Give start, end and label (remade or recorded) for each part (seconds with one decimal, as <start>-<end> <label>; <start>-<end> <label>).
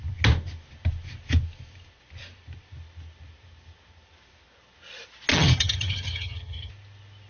0.0-5.3 recorded; 5.3-6.7 remade; 6.7-7.3 recorded